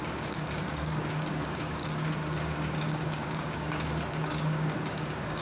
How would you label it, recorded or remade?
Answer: remade